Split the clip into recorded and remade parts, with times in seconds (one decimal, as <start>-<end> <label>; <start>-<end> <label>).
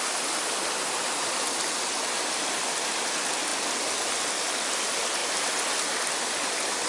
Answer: 0.0-6.9 recorded